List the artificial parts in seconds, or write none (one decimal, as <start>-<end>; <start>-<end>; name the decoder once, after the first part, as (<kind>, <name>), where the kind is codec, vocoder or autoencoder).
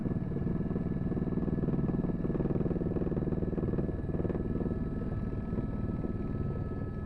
0.0-0.5 (vocoder, BigVGAN v2)